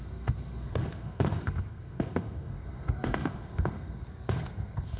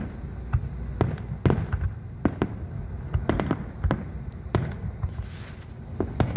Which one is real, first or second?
second